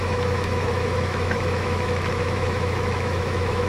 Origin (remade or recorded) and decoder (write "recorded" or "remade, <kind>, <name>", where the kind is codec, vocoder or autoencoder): remade, autoencoder, DAC-VAE